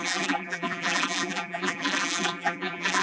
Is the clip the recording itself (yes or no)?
no